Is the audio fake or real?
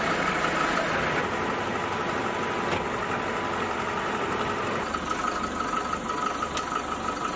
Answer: real